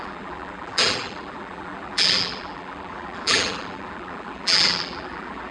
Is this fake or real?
fake